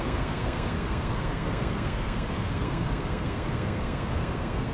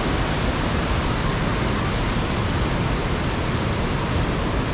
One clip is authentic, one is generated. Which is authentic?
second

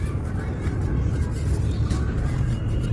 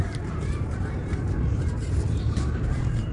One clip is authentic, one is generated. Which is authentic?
first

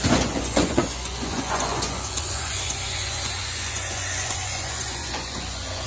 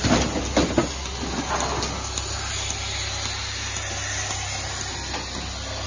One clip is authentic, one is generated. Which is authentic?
second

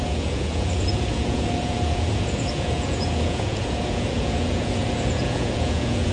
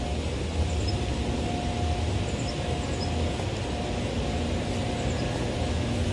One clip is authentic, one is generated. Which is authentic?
second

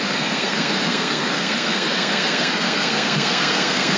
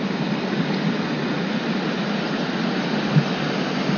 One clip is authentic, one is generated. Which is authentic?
second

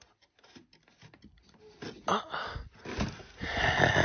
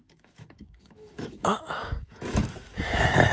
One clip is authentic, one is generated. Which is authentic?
first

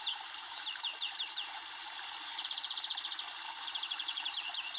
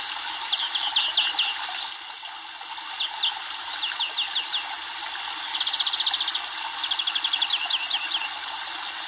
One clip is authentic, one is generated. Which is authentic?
second